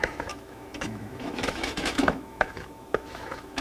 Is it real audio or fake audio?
fake